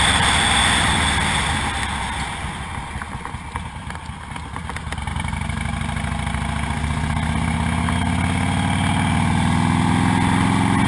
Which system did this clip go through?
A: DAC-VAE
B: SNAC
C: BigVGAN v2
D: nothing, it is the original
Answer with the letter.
D